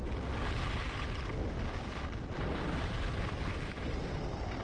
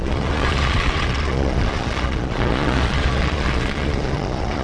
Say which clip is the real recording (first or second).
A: first